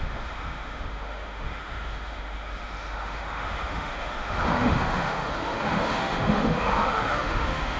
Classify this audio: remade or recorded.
remade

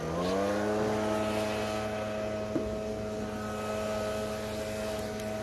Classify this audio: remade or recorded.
recorded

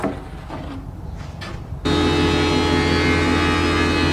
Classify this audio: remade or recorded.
recorded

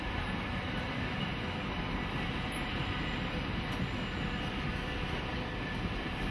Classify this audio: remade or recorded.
recorded